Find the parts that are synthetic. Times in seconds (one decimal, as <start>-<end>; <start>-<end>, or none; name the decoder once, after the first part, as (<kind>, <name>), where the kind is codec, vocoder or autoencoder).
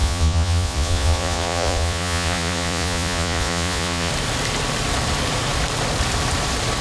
0.0-4.1 (vocoder, Vocos)